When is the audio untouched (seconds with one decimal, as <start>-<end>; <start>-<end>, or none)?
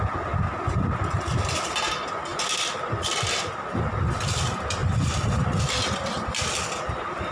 0.0-2.3; 4.2-4.8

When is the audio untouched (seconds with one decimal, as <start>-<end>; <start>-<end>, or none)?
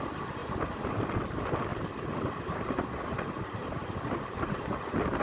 0.0-0.4; 1.1-1.7; 4.8-5.2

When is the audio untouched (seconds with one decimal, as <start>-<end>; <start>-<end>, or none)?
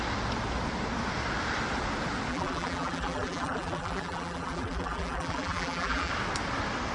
0.0-2.3; 6.1-6.9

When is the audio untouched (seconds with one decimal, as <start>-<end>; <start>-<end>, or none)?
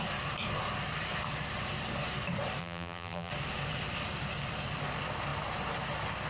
0.0-2.6; 3.3-6.3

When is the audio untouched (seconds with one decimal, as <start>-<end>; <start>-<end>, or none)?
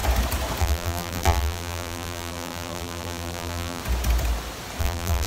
0.0-0.6; 3.8-4.8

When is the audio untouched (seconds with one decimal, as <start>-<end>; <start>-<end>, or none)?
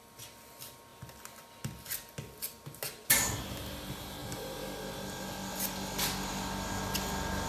0.0-7.5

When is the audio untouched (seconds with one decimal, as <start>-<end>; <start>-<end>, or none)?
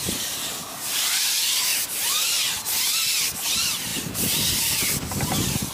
0.0-1.7; 2.3-5.7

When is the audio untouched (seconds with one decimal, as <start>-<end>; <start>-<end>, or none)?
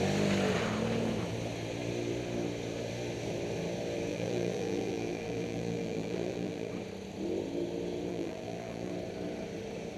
0.0-4.1; 6.7-8.1; 8.9-10.0